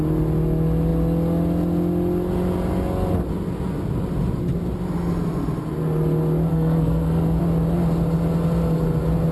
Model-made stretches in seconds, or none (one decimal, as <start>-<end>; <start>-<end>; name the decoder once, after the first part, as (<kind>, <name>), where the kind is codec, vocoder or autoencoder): 6.5-7.4 (codec, SNAC)